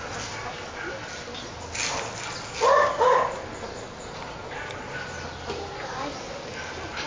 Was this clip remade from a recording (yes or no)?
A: no